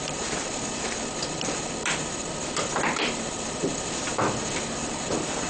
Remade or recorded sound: remade